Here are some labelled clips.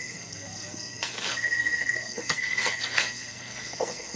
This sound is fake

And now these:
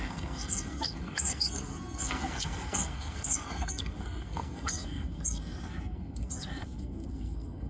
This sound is fake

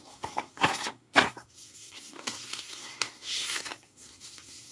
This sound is fake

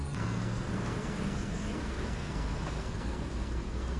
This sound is fake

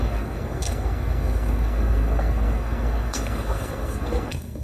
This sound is fake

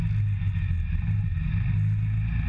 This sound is real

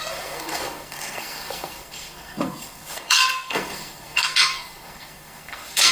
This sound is fake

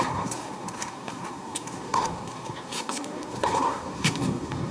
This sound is fake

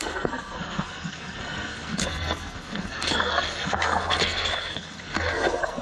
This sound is fake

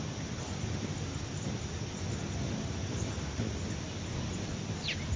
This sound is real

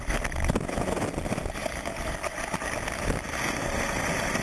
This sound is real